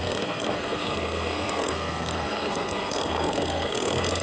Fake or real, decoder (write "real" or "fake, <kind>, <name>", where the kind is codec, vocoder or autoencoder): fake, codec, SNAC